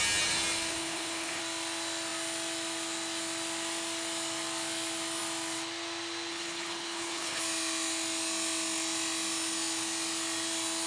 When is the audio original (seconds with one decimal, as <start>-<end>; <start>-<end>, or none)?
0.0-0.7; 1.4-6.3; 7.4-10.9

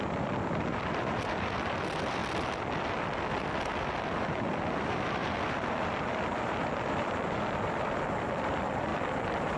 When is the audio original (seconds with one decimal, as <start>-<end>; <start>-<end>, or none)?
2.2-4.7

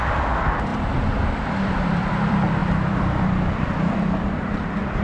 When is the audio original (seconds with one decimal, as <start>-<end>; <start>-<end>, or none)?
none

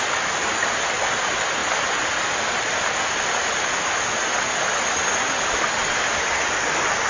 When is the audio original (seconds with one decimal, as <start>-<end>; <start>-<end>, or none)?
0.0-7.1